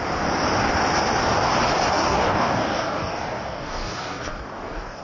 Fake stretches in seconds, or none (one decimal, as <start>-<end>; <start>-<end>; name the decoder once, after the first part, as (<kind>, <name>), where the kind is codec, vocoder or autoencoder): 1.9-5.0 (codec, DAC)